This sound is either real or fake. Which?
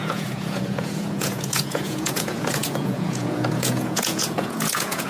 fake